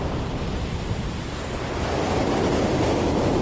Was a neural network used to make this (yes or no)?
no